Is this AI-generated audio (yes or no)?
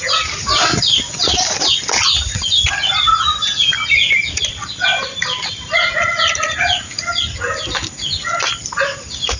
no